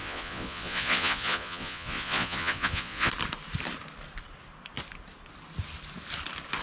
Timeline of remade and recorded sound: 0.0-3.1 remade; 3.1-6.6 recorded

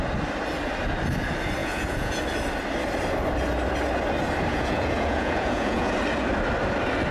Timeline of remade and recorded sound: 0.0-1.6 recorded; 1.6-2.2 remade; 2.2-4.5 recorded; 4.5-5.9 remade; 5.9-7.1 recorded

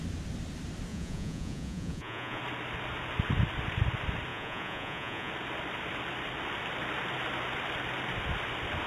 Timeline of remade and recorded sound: 0.0-0.9 recorded; 0.9-2.4 remade; 2.4-4.3 recorded; 4.3-5.3 remade; 5.3-8.9 recorded

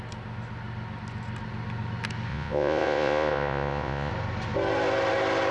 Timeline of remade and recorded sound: 0.0-2.3 recorded; 2.3-4.1 remade; 4.1-5.5 recorded